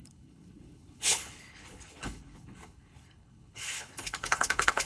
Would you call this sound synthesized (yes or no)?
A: yes